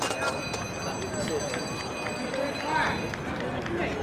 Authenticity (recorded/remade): recorded